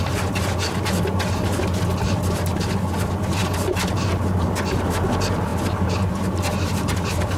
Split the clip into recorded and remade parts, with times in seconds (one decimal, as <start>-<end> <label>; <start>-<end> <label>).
0.0-6.5 recorded; 6.5-7.4 remade

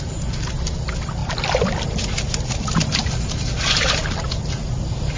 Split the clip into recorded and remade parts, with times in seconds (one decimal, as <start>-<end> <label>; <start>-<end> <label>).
0.0-5.2 recorded

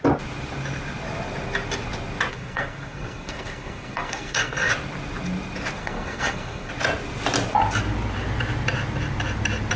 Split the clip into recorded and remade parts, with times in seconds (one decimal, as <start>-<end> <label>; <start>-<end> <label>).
0.0-2.3 recorded; 2.3-4.7 remade; 4.7-5.8 recorded; 5.8-6.7 remade; 6.7-9.8 recorded

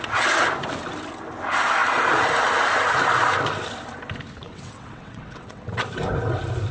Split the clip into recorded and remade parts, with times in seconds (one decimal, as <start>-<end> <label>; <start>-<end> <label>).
0.0-4.4 recorded; 4.4-5.8 remade; 5.8-6.7 recorded

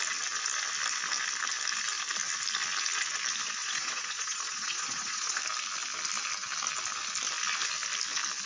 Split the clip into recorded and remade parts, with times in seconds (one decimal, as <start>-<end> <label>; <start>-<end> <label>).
0.0-3.6 recorded; 3.6-5.4 remade; 5.4-8.5 recorded

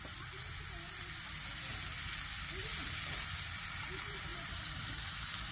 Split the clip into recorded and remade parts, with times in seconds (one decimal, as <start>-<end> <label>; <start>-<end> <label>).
0.0-5.5 recorded

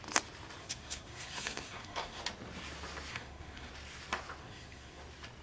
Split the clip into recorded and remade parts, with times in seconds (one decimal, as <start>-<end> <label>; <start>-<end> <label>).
0.0-0.6 recorded; 0.6-2.2 remade; 2.2-3.1 recorded; 3.1-3.7 remade; 3.7-4.4 recorded; 4.4-5.0 remade; 5.0-5.4 recorded

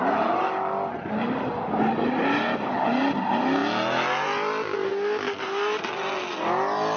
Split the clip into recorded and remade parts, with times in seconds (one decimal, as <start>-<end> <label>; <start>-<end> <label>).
0.0-7.0 recorded